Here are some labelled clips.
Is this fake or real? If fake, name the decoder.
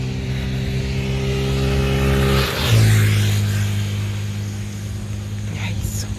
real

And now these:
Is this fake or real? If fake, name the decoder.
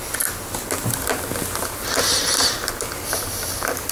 real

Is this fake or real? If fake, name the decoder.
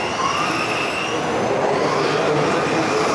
real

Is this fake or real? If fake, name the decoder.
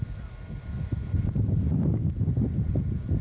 real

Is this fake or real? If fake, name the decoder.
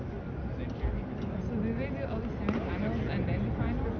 real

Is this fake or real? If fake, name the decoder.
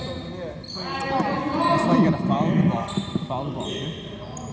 real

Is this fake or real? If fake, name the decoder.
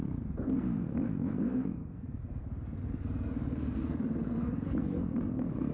fake, codec, SNAC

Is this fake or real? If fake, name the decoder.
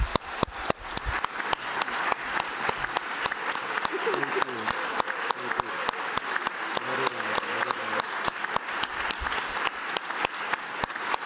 real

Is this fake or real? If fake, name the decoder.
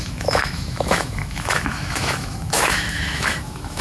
fake, autoencoder, DAC-VAE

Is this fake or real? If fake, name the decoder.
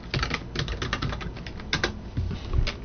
real